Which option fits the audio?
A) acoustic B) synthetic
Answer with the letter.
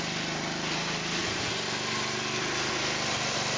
A